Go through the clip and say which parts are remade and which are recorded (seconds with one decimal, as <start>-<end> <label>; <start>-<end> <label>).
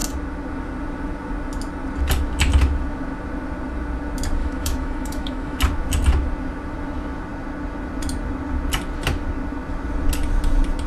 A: 0.0-4.4 recorded; 4.4-5.6 remade; 5.6-10.9 recorded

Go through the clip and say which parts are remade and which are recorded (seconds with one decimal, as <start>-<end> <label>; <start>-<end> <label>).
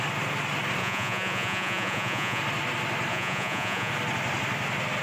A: 0.0-0.8 recorded; 0.8-2.4 remade; 2.4-3.1 recorded; 3.1-3.9 remade; 3.9-5.0 recorded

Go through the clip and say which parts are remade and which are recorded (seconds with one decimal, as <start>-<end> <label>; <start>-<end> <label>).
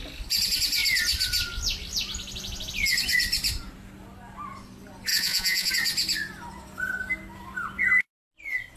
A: 0.0-5.1 recorded; 5.1-5.7 remade; 5.7-8.8 recorded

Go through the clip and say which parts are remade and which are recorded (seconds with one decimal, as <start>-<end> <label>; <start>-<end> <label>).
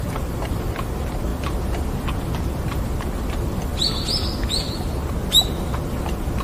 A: 0.0-6.4 recorded